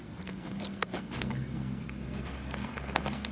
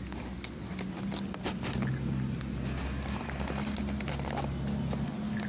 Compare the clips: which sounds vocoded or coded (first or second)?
first